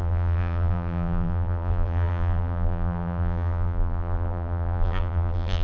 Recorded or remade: remade